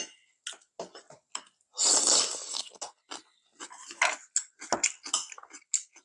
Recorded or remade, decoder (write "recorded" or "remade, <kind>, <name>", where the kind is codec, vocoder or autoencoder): recorded